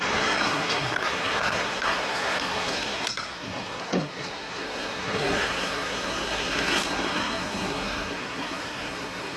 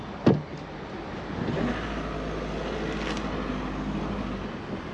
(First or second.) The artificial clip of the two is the first